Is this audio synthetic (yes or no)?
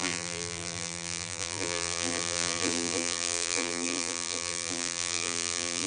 yes